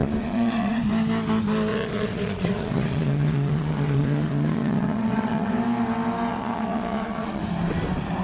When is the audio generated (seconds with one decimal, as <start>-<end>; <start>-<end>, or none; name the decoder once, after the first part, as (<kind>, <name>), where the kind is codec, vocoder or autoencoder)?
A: 0.0-0.8 (vocoder, Vocos); 1.7-5.5; 6.3-7.4